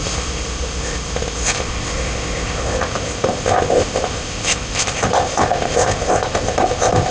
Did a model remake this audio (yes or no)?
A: yes